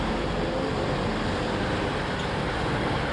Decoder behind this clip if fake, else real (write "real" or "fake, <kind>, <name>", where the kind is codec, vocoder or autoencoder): real